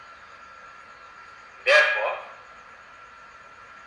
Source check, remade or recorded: recorded